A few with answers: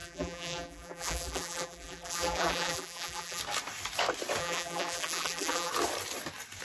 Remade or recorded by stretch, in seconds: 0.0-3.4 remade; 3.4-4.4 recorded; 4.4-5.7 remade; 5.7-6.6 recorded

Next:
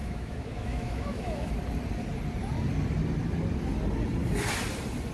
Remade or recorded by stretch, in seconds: 0.0-1.5 remade; 1.5-5.1 recorded

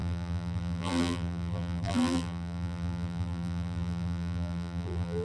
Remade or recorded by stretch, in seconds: 0.0-5.2 remade